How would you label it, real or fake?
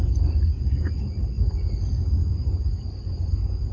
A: real